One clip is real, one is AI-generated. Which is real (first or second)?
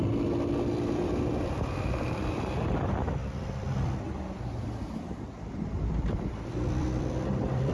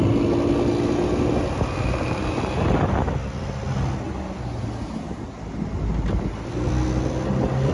second